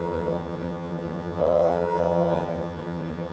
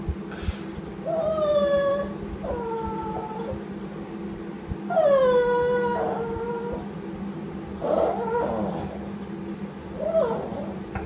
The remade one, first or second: first